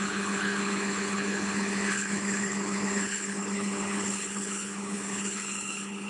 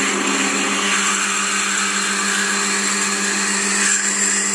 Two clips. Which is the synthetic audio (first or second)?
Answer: first